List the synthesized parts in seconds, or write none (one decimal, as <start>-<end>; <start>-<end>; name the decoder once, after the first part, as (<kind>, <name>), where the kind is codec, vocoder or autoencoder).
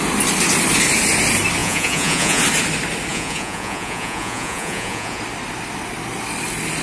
1.6-2.4 (vocoder, Vocos); 3.1-5.2